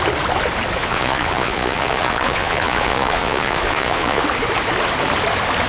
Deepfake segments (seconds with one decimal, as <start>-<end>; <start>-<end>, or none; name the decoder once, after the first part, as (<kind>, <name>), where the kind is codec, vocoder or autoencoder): 0.8-4.2 (vocoder, Vocos)